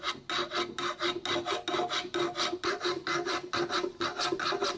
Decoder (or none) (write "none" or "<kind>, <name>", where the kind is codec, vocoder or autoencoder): none